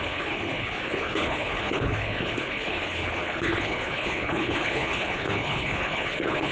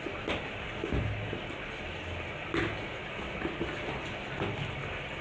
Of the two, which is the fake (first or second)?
first